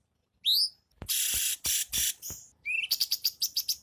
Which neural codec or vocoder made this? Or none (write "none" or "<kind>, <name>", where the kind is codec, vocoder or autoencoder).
none